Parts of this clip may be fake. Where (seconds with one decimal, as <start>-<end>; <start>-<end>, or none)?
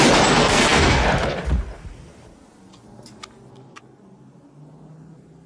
0.4-1.0